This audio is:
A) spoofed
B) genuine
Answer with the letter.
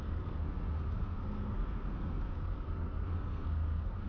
A